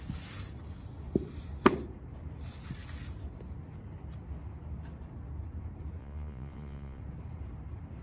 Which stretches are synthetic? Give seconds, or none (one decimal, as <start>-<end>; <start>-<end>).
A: 6.0-7.0